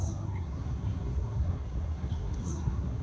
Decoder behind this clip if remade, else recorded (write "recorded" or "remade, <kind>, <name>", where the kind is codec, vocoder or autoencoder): remade, codec, SNAC